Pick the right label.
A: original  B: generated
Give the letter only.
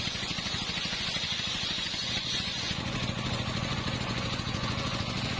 B